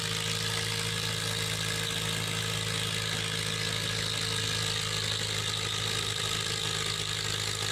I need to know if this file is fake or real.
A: real